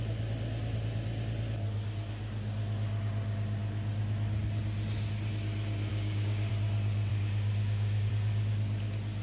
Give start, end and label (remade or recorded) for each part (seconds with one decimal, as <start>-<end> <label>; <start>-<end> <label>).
0.0-5.9 recorded; 5.9-6.5 remade; 6.5-7.1 recorded; 7.1-8.1 remade; 8.1-9.2 recorded

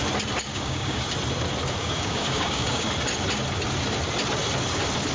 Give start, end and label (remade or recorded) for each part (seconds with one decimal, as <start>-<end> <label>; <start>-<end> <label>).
0.0-0.5 recorded; 0.5-1.0 remade; 1.0-1.8 recorded; 1.8-2.9 remade; 2.9-5.1 recorded

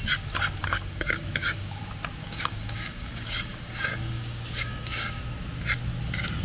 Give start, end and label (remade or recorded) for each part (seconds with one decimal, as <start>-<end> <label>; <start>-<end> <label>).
0.0-0.6 recorded; 0.6-1.8 remade; 1.8-2.2 recorded; 2.2-5.2 remade; 5.2-6.4 recorded

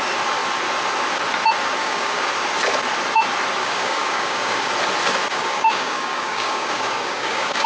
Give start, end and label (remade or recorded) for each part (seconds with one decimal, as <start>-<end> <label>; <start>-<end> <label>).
0.0-1.8 recorded; 1.8-2.3 remade; 2.3-3.6 recorded; 3.6-4.7 remade; 4.7-5.3 recorded; 5.3-7.7 remade

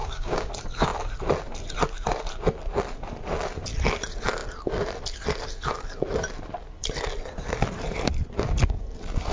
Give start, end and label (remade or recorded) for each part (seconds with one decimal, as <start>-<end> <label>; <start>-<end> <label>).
0.0-0.5 remade; 0.5-9.3 recorded